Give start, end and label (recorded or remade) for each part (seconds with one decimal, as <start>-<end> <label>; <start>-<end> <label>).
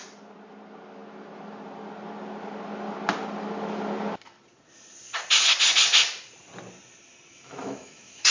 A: 0.0-7.3 recorded; 7.3-8.3 remade